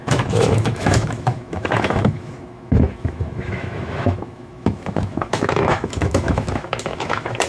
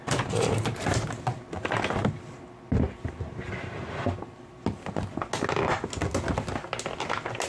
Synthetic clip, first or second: first